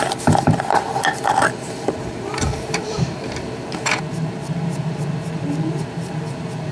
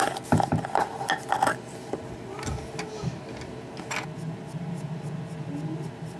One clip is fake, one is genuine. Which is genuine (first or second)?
second